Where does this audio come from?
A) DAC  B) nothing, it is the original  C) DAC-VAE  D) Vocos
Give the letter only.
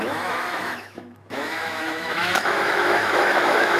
C